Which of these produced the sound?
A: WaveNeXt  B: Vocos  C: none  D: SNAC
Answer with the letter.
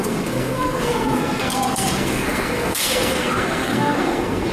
D